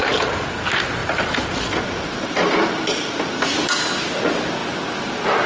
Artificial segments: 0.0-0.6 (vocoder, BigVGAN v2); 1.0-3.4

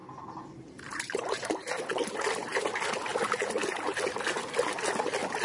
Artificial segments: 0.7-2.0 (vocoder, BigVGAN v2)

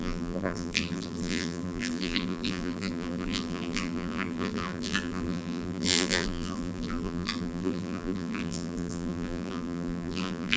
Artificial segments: 0.0-10.6 (vocoder, BigVGAN v2)

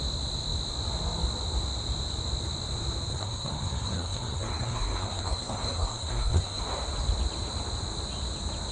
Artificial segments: 3.1-6.6 (codec, SNAC)